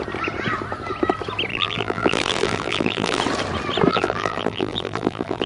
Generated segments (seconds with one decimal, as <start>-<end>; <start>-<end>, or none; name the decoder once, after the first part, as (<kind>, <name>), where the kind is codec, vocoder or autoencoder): 1.5-3.2 (vocoder, BigVGAN v2); 3.9-5.5